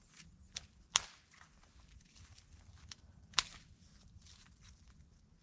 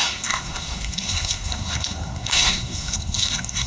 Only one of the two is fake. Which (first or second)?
second